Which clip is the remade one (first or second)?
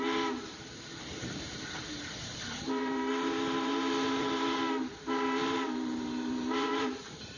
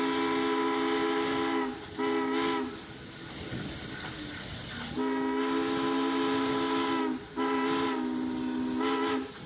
first